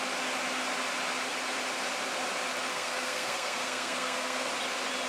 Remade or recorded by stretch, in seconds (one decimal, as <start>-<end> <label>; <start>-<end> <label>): 0.0-2.7 recorded; 2.7-4.5 remade; 4.5-5.1 recorded